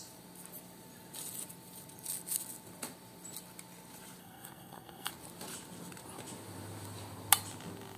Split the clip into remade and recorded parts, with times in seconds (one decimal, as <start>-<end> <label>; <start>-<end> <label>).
0.0-4.2 recorded; 4.2-5.1 remade; 5.1-8.0 recorded